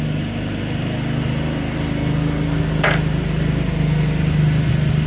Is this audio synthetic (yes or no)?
no